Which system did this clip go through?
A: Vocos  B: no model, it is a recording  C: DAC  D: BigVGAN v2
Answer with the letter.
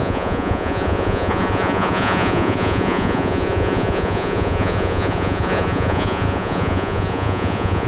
A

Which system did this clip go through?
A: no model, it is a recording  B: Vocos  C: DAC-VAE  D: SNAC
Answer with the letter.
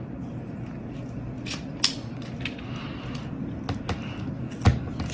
A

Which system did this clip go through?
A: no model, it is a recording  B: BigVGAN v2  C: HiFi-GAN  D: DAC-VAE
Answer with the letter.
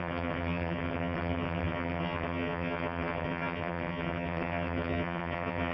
C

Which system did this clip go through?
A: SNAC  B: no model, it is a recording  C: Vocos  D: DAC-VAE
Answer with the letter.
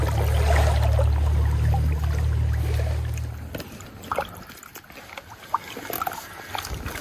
B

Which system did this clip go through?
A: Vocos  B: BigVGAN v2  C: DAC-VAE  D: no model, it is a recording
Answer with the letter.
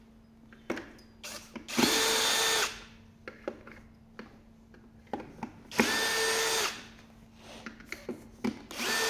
D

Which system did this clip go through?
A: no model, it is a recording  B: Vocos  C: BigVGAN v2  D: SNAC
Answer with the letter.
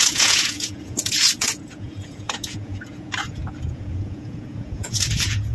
B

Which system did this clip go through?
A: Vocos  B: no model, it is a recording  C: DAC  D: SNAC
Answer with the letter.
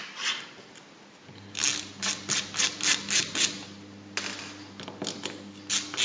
B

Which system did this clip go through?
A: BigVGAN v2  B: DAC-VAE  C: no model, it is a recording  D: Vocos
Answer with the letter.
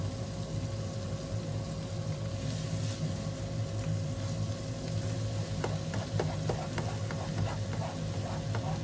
C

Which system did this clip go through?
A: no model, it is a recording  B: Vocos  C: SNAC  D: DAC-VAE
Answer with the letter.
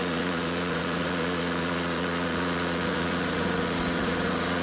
B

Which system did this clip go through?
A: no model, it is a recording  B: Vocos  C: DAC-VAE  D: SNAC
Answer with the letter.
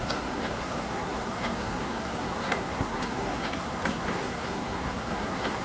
D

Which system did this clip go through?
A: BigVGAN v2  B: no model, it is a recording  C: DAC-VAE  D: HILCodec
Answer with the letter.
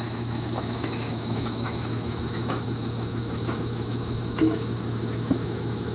C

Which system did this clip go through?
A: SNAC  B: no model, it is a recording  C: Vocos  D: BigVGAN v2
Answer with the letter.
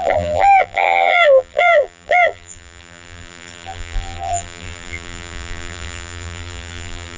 D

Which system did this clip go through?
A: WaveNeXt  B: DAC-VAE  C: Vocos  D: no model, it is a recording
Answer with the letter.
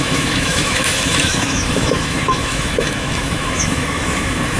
B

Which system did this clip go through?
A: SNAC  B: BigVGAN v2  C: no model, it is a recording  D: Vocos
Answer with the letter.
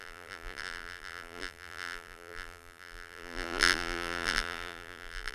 B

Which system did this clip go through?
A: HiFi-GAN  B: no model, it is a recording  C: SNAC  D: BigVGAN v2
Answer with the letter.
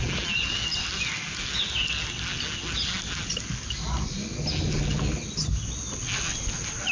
B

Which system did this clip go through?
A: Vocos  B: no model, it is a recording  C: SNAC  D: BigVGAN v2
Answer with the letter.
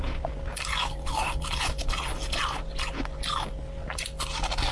B